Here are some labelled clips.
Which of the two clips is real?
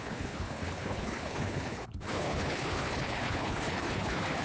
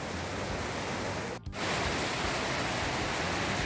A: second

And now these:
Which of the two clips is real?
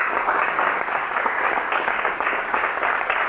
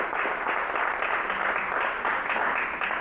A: second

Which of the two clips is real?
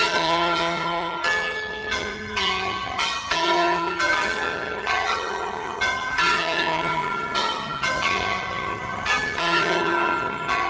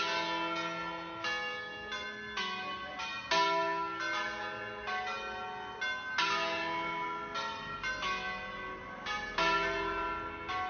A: second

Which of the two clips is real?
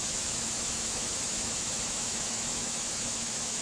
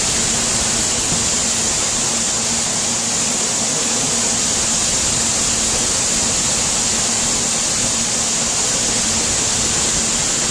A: second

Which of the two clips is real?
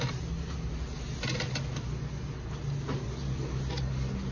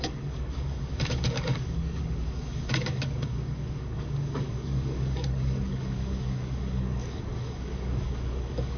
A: first